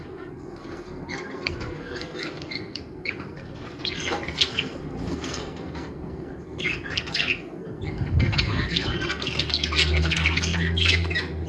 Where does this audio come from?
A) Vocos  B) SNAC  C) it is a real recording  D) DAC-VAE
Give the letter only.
B